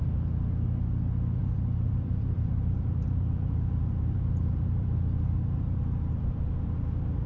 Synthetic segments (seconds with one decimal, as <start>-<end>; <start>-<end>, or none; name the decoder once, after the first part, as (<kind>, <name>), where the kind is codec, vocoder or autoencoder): 1.4-5.8 (vocoder, BigVGAN v2)